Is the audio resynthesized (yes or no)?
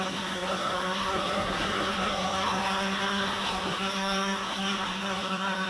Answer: yes